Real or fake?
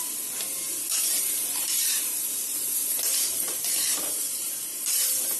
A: fake